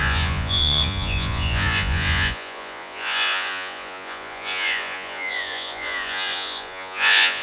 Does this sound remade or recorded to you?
remade